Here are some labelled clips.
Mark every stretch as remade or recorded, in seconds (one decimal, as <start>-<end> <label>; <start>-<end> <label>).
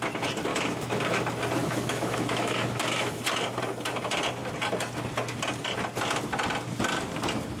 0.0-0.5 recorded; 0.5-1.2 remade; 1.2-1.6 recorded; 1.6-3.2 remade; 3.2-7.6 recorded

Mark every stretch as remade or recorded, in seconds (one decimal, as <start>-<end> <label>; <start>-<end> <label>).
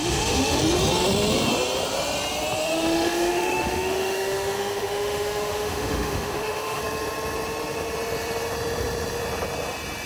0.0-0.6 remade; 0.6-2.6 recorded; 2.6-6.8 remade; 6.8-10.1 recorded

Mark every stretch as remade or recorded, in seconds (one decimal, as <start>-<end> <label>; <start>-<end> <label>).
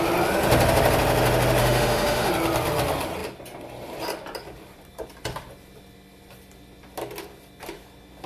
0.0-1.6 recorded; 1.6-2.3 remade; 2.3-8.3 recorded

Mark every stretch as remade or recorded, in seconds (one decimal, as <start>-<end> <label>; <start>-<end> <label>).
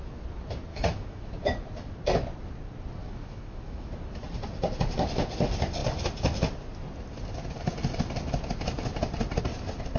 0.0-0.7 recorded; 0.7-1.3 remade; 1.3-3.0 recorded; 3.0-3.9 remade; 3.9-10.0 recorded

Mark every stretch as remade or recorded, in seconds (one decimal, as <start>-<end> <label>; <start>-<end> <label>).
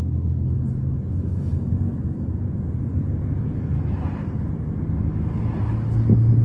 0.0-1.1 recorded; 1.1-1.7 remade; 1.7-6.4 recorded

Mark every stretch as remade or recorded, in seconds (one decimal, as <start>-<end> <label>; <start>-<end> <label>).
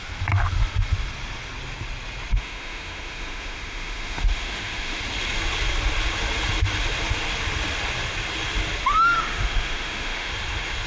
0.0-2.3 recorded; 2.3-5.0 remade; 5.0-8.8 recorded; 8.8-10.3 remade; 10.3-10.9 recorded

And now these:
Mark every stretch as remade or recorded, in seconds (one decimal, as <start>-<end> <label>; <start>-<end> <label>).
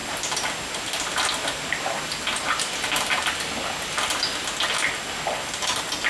0.0-6.1 recorded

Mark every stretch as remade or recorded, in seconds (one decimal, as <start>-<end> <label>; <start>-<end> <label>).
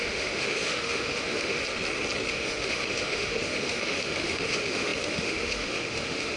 0.0-1.6 remade; 1.6-2.3 recorded; 2.3-6.4 remade